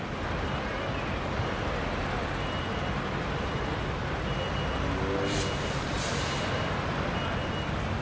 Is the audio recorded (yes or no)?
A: yes